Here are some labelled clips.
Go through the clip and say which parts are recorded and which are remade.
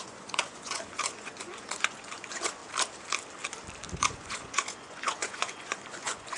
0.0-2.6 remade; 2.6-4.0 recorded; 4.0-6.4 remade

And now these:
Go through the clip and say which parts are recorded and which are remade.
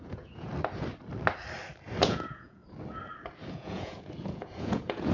0.0-0.5 remade; 0.5-2.0 recorded; 2.0-2.6 remade; 2.6-3.5 recorded; 3.5-5.1 remade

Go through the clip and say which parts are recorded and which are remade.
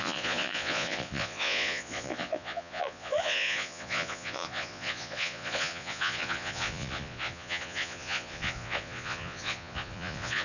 0.0-10.4 remade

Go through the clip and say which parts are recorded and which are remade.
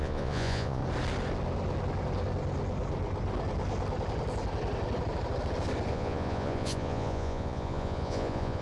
0.0-0.8 remade; 0.8-5.9 recorded; 5.9-8.6 remade